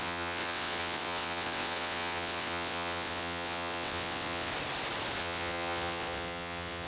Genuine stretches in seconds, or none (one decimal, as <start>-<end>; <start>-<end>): 4.5-5.2